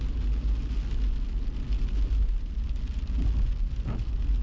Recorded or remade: recorded